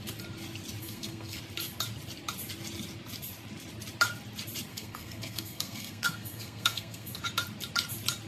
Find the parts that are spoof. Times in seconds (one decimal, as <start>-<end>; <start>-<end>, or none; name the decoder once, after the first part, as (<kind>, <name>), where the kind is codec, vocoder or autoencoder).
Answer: 0.8-1.4 (codec, SNAC); 4.7-7.2